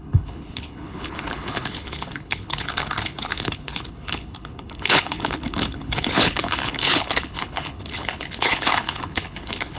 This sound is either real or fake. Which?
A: fake